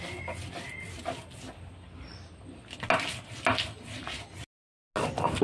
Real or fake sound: real